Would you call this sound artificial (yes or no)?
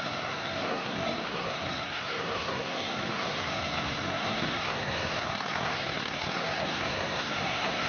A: yes